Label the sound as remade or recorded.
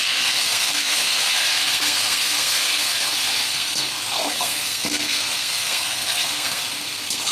remade